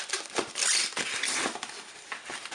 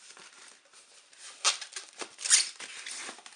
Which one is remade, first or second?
first